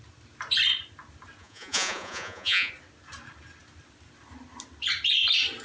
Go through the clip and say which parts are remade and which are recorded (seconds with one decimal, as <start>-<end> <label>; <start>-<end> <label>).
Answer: 0.0-1.4 recorded; 1.4-2.7 remade; 2.7-5.6 recorded